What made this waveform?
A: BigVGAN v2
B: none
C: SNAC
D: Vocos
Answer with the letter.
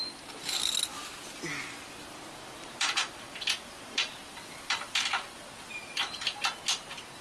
A